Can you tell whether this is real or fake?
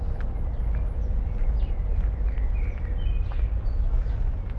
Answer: real